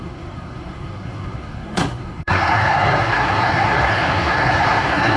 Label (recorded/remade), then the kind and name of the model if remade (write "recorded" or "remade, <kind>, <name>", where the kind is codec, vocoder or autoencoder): remade, codec, SNAC